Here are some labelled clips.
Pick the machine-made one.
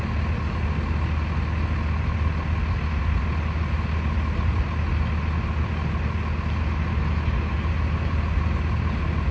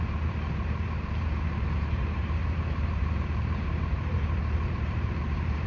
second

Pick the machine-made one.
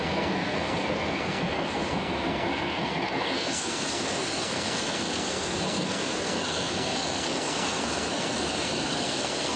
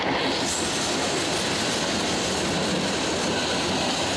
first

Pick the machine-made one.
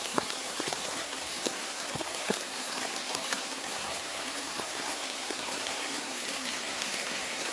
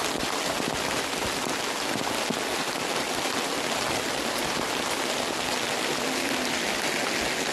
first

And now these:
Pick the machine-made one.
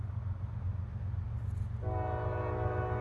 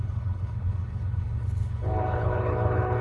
second